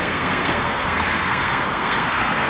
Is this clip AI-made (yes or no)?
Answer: yes